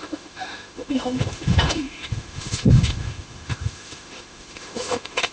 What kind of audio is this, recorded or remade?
remade